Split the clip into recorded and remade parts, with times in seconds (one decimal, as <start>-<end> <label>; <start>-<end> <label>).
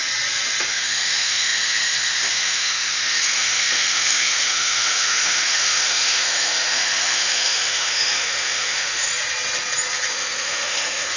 0.0-0.7 recorded; 0.7-9.1 remade; 9.1-10.1 recorded; 10.1-11.2 remade